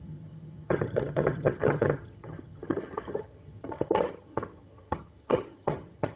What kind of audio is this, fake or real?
fake